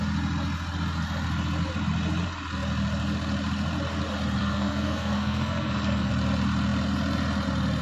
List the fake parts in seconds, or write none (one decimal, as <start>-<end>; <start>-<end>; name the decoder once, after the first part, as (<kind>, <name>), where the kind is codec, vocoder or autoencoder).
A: 4.4-6.1 (codec, SNAC)